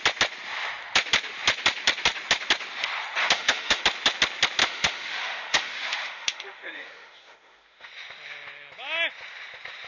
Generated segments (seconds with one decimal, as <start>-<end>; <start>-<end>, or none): 3.2-3.8; 4.6-7.9